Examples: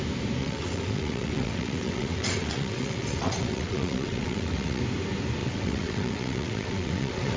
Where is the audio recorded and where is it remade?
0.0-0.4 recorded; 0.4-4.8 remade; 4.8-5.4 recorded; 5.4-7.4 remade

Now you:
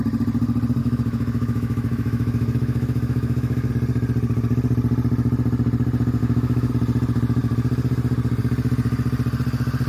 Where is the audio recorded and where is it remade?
0.0-0.8 recorded; 0.8-3.7 remade; 3.7-6.2 recorded; 6.2-6.7 remade; 6.7-9.9 recorded

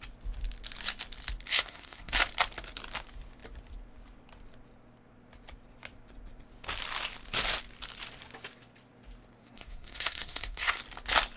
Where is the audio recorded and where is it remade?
0.0-1.5 recorded; 1.5-2.1 remade; 2.1-9.4 recorded; 9.4-10.8 remade; 10.8-11.4 recorded